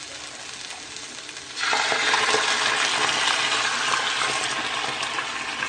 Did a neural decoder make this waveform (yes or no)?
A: no